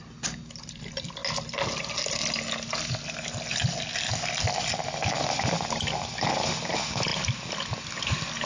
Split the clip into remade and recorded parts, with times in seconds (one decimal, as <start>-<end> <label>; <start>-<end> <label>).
0.0-8.5 recorded